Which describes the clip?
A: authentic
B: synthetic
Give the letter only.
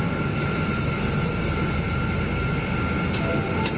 A